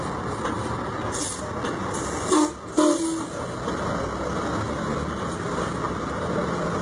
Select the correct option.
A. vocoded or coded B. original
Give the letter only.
B